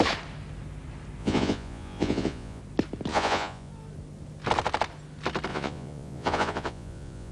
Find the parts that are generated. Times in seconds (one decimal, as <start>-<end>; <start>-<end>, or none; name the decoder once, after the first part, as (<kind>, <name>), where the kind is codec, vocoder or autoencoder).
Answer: 1.2-2.6 (vocoder, Vocos); 3.1-3.7; 5.5-7.3